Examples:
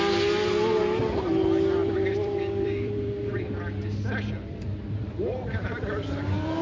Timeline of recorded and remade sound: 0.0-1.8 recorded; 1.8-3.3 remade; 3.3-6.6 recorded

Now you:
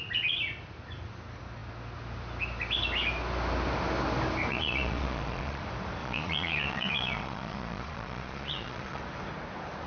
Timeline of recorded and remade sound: 0.0-4.5 recorded; 4.5-5.6 remade; 5.6-6.0 recorded; 6.0-9.0 remade; 9.0-9.9 recorded

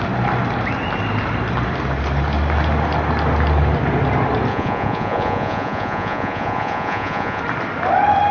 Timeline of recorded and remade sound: 0.0-4.5 recorded; 4.5-7.4 remade; 7.4-8.3 recorded

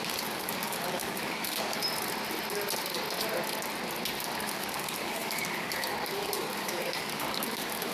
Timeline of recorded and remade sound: 0.0-1.8 remade; 1.8-4.4 recorded; 4.4-7.9 remade

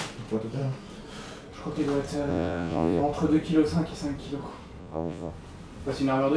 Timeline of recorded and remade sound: 0.0-2.3 recorded; 2.3-3.0 remade; 3.0-4.8 recorded; 4.8-5.3 remade; 5.3-6.4 recorded

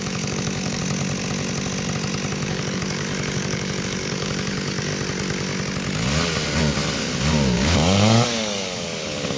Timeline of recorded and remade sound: 0.0-0.8 remade; 0.8-2.3 recorded; 2.3-4.9 remade; 4.9-7.0 recorded; 7.0-9.4 remade

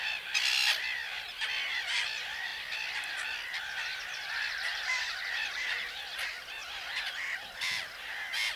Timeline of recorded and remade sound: 0.0-4.7 recorded; 4.7-8.6 remade

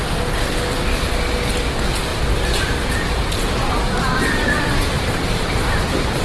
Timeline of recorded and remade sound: 0.0-2.1 recorded; 2.1-5.2 remade; 5.2-6.2 recorded